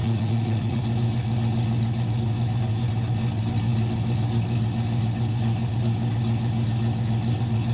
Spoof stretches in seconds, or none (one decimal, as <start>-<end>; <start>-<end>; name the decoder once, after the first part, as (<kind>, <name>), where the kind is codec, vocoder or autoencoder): 0.0-0.8 (vocoder, Vocos)